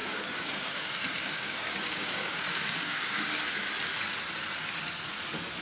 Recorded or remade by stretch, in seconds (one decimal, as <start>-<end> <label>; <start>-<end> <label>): 0.0-3.4 remade; 3.4-5.6 recorded